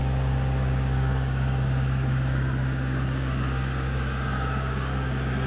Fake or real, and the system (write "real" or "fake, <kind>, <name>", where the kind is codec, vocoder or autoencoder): fake, codec, DAC